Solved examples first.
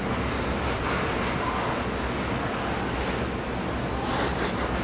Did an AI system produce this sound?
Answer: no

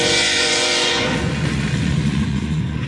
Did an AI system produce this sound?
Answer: yes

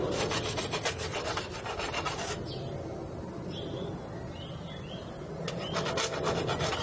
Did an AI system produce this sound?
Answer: no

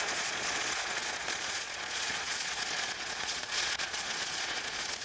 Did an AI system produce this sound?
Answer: yes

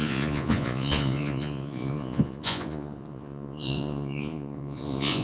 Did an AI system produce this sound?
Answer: yes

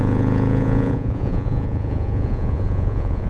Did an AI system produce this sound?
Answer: yes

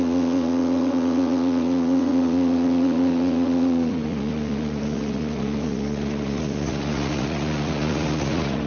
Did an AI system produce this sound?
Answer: yes